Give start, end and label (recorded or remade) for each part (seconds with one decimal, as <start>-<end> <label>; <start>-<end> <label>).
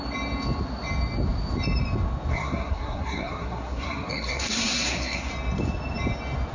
0.0-2.3 recorded; 2.3-5.3 remade; 5.3-6.5 recorded